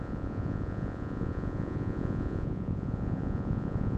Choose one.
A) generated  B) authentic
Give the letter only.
A